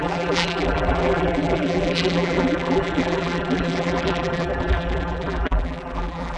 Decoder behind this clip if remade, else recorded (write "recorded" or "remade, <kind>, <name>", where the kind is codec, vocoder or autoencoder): remade, vocoder, BigVGAN v2